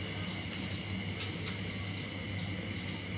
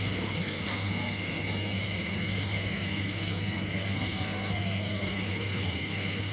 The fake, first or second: second